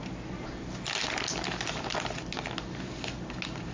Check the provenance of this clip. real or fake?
real